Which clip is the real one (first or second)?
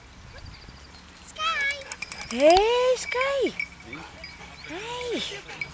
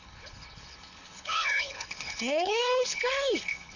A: first